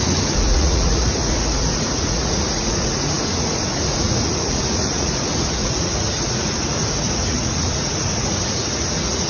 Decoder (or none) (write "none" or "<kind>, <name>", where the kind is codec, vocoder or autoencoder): vocoder, Vocos